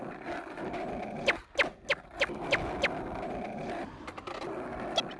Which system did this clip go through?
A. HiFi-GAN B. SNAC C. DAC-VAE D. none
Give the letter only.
D